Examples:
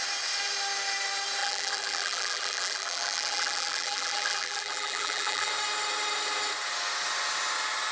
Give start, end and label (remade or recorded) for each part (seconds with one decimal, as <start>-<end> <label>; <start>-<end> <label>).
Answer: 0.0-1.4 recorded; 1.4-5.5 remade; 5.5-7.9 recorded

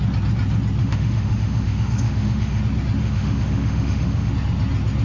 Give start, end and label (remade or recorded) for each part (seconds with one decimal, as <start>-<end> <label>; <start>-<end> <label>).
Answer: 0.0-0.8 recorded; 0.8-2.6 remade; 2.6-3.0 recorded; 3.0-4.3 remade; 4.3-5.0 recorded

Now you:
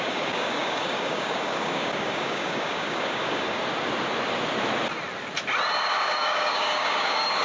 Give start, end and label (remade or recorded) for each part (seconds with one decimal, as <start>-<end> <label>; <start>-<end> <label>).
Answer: 0.0-3.6 remade; 3.6-5.8 recorded; 5.8-7.4 remade